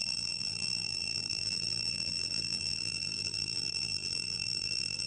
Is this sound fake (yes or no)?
yes